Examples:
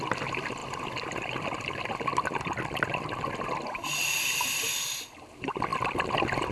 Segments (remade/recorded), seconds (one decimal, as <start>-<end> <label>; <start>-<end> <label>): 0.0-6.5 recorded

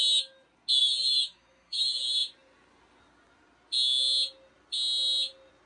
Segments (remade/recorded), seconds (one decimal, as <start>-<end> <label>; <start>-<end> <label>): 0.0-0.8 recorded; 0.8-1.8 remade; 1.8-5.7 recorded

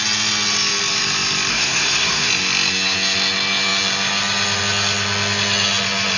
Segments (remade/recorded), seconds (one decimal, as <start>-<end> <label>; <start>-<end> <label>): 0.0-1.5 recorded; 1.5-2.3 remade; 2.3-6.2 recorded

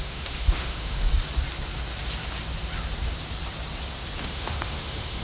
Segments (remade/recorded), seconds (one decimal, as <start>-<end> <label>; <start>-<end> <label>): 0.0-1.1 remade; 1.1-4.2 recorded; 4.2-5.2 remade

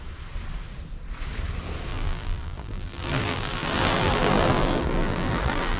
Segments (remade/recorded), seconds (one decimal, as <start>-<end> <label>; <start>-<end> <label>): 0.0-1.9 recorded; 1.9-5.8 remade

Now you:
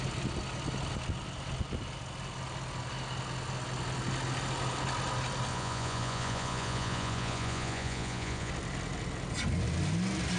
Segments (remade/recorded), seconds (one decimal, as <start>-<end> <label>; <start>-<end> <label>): 0.0-5.5 recorded; 5.5-8.5 remade; 8.5-10.4 recorded

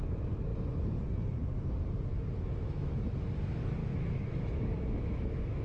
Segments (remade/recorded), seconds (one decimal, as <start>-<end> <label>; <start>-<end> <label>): 0.0-2.1 recorded; 2.1-3.1 remade; 3.1-3.8 recorded; 3.8-5.6 remade

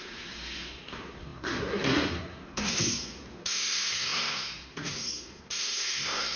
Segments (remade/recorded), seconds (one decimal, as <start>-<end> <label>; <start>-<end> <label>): 0.0-6.4 remade